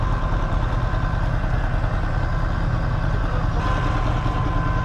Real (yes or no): yes